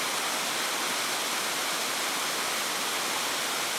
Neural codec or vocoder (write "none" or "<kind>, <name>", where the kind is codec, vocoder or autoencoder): none